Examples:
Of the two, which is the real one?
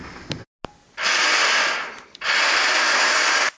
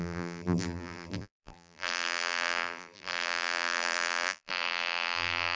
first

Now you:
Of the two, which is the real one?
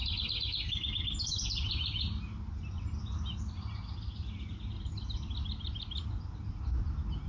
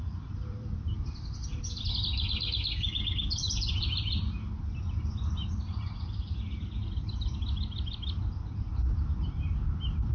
first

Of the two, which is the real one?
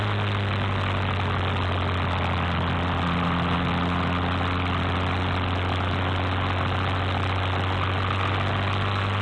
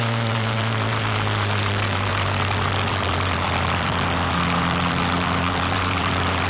first